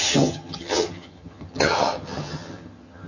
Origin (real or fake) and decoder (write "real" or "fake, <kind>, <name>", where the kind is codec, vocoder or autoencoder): fake, vocoder, HiFi-GAN